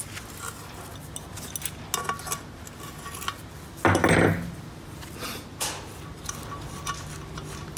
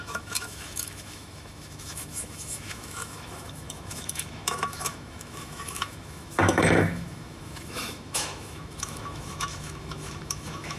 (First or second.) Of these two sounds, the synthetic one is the second